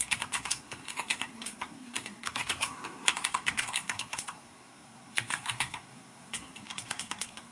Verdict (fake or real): fake